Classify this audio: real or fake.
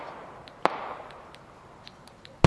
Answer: real